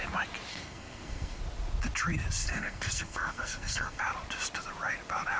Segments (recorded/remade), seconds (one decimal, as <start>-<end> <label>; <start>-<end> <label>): 0.0-0.5 recorded; 0.5-1.4 remade; 1.4-2.4 recorded; 2.4-4.0 remade; 4.0-5.4 recorded